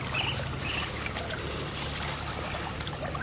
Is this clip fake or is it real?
real